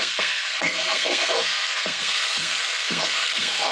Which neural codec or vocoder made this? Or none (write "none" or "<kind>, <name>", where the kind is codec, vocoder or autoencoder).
codec, SNAC